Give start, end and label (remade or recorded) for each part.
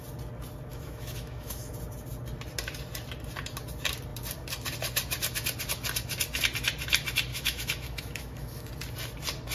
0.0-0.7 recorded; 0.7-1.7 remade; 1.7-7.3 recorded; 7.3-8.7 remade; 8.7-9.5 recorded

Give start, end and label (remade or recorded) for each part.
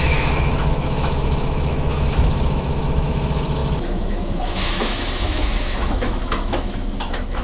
0.0-7.4 remade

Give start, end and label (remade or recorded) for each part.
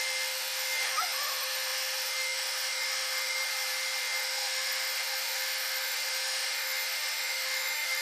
0.0-3.5 remade; 3.5-4.0 recorded; 4.0-8.0 remade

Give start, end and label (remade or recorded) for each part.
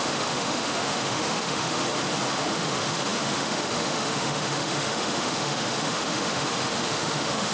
0.0-1.8 remade; 1.8-2.3 recorded; 2.3-7.5 remade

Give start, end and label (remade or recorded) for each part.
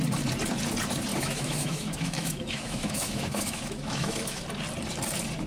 0.0-1.1 recorded; 1.1-4.4 remade; 4.4-5.5 recorded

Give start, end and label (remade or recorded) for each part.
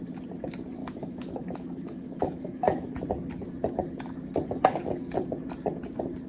0.0-0.8 recorded; 0.8-2.9 remade; 2.9-6.3 recorded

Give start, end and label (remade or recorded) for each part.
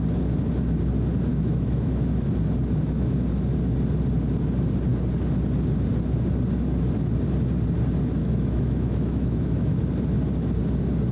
0.0-1.3 recorded; 1.3-2.3 remade; 2.3-8.2 recorded; 8.2-9.8 remade; 9.8-11.1 recorded